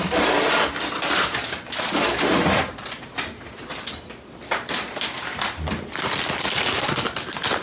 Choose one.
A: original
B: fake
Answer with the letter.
A